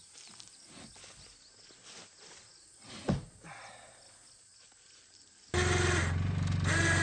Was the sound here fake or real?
real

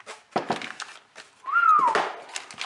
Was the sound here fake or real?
real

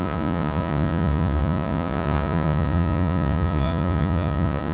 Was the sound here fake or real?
fake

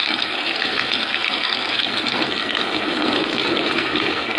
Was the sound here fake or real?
fake